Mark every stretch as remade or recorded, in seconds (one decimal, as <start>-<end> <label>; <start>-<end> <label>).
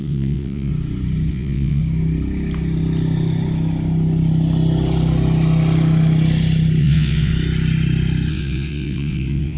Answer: 0.0-0.7 remade; 0.7-1.3 recorded; 1.3-1.8 remade; 1.8-6.8 recorded; 6.8-7.3 remade; 7.3-8.3 recorded; 8.3-9.6 remade